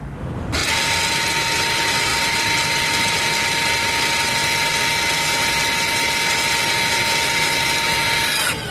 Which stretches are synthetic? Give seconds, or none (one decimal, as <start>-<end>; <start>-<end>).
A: none